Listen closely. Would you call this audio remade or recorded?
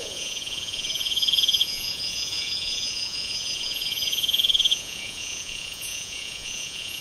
remade